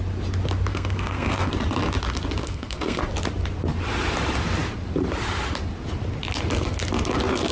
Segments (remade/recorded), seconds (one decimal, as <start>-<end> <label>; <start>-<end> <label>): 0.0-0.7 recorded; 0.7-1.5 remade; 1.5-2.4 recorded; 2.4-3.0 remade; 3.0-7.5 recorded